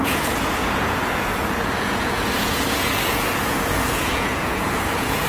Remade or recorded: remade